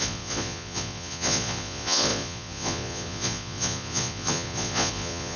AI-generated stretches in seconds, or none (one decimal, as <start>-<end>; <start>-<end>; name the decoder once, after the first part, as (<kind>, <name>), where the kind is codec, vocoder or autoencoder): 0.0-5.4 (vocoder, Vocos)